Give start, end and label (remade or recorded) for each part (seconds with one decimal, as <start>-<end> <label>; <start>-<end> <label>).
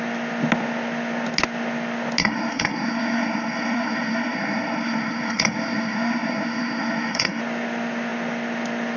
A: 0.0-2.2 recorded; 2.2-7.4 remade; 7.4-9.0 recorded